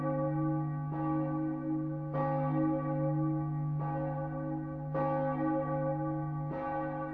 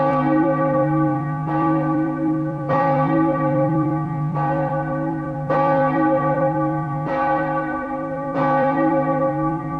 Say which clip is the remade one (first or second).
second